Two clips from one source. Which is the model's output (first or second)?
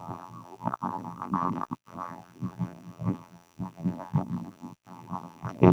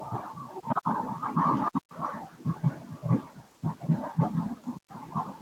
first